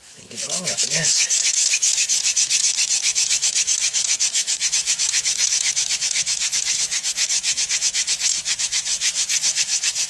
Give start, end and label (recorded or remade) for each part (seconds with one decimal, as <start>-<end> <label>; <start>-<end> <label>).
0.0-10.1 remade